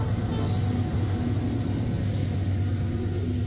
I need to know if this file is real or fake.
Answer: real